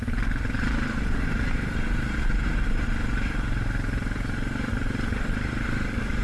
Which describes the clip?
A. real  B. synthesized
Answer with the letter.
B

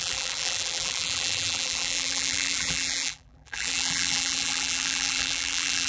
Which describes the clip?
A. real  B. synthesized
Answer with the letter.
B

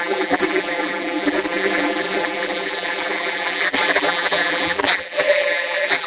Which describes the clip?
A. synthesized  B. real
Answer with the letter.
A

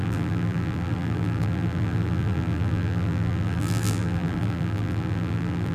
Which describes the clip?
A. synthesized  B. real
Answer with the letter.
A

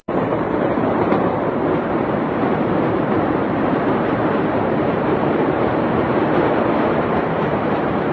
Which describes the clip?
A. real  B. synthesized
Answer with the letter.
B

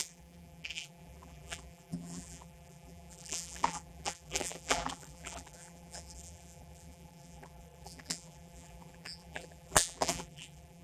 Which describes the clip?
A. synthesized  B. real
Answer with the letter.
A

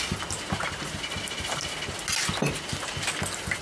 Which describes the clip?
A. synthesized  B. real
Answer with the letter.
B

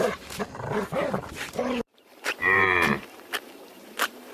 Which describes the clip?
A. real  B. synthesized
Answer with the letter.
B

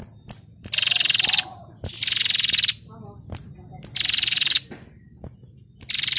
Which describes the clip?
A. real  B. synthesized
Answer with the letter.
A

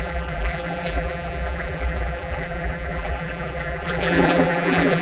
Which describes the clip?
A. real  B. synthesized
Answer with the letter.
B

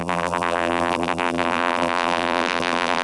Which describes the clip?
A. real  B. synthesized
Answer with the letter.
B